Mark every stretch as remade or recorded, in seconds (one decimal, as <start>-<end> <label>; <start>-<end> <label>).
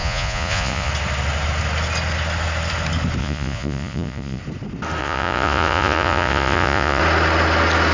0.0-0.9 remade; 0.9-3.2 recorded; 3.2-4.4 remade; 4.4-5.0 recorded; 5.0-7.0 remade; 7.0-7.9 recorded